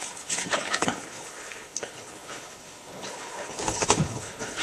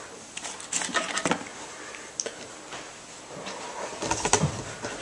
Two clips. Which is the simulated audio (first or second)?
first